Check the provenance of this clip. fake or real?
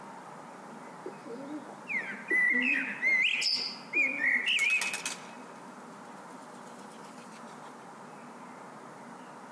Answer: real